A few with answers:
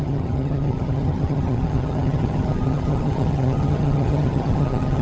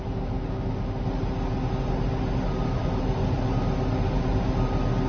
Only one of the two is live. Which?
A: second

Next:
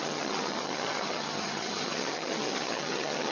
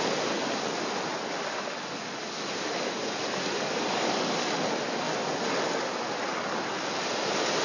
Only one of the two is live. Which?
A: second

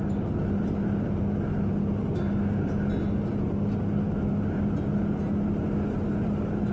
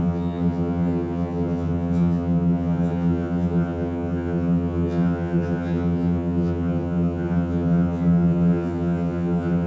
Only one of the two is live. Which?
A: first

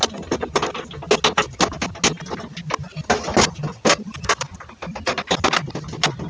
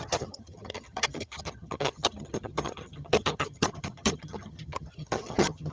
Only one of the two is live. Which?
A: first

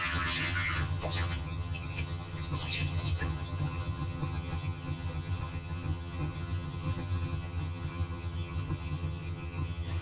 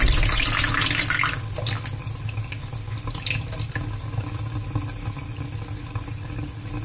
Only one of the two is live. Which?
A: second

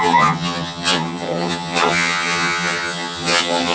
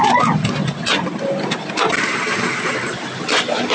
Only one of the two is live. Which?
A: second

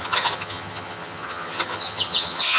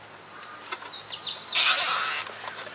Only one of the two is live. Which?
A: second